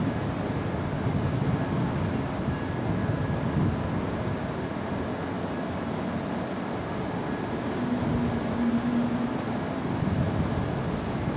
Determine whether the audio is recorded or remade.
recorded